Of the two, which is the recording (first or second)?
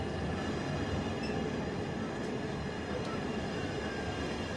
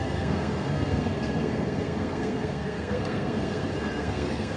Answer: first